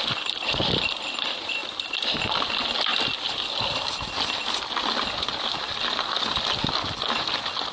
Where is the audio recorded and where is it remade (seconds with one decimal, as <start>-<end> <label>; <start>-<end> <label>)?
0.0-7.7 recorded